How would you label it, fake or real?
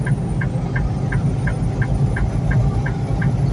real